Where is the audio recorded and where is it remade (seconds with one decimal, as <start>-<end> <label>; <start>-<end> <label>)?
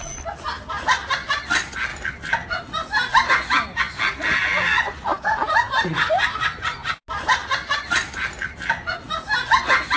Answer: 0.0-10.0 recorded